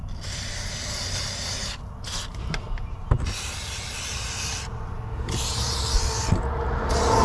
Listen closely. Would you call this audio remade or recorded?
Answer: recorded